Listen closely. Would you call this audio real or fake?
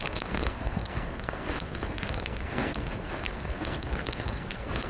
fake